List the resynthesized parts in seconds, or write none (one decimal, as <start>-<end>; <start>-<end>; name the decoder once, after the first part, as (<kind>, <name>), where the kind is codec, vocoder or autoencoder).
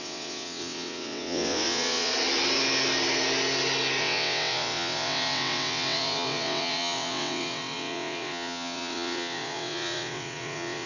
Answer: 0.0-2.1 (vocoder, WaveNeXt); 4.0-10.9